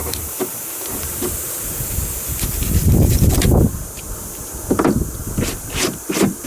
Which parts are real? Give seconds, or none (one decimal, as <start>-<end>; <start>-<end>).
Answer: 1.6-6.5